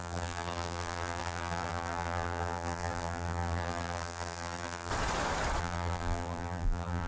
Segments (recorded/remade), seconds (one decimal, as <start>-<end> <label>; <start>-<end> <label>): 0.0-4.9 remade; 4.9-5.6 recorded; 5.6-7.1 remade